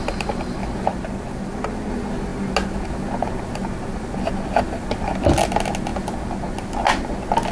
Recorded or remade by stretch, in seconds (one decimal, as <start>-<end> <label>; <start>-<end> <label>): 0.0-0.9 recorded; 0.9-1.9 remade; 1.9-7.5 recorded